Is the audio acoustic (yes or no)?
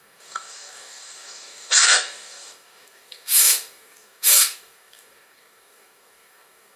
no